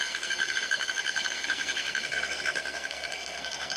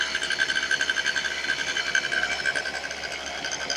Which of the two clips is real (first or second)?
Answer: second